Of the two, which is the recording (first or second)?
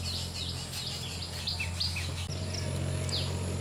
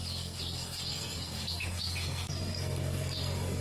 first